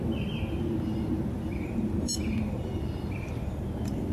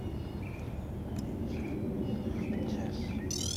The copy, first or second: first